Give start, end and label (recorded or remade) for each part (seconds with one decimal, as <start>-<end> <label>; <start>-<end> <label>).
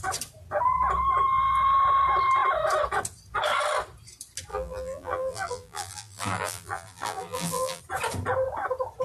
0.0-4.5 recorded; 4.5-7.8 remade; 7.8-9.0 recorded